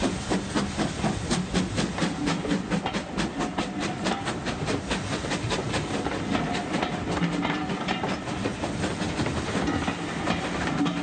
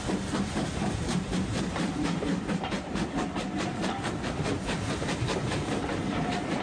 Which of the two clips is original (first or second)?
first